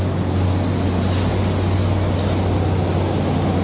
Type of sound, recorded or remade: recorded